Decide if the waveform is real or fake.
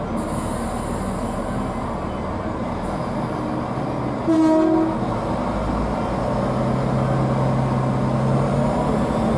real